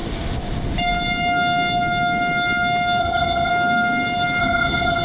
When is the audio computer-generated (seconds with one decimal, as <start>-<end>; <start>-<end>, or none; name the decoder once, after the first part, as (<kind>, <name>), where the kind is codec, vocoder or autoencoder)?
3.0-3.5 (vocoder, HiFi-GAN); 4.4-5.0

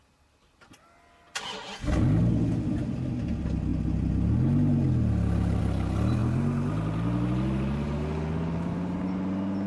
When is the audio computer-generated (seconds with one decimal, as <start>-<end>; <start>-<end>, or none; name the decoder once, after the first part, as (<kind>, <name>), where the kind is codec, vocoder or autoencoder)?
none

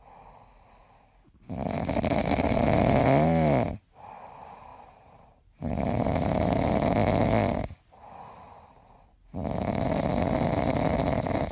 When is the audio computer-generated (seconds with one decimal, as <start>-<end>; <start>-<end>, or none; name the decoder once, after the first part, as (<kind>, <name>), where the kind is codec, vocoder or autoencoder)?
4.7-6.7 (vocoder, BigVGAN v2)

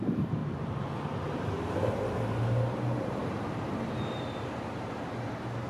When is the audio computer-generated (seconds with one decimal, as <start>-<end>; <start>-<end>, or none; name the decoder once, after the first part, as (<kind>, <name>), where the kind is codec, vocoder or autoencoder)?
0.0-0.4 (vocoder, BigVGAN v2); 1.2-5.7

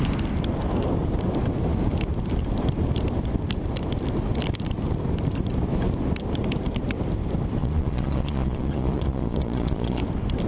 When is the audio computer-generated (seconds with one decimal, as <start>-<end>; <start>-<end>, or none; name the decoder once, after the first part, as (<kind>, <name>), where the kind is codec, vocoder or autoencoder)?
7.6-10.0 (vocoder, Vocos)

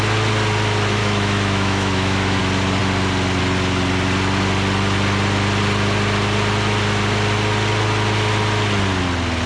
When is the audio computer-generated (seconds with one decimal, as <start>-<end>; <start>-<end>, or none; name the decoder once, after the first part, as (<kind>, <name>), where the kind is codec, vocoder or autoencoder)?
1.0-2.4 (autoencoder, DAC-VAE)

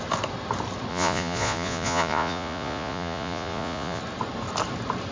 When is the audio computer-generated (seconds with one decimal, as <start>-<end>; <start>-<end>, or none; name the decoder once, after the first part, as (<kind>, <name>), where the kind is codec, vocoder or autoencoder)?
0.9-4.0 (vocoder, Vocos)